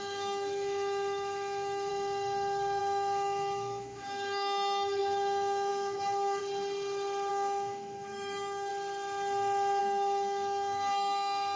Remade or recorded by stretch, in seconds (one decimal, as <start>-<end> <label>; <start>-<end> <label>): 0.0-1.9 remade; 1.9-2.8 recorded; 2.8-6.4 remade; 6.4-7.3 recorded; 7.3-8.7 remade; 8.7-9.8 recorded; 9.8-11.6 remade